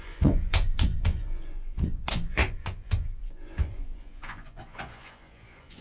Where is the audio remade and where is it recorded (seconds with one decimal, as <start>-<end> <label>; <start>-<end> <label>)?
0.0-5.8 remade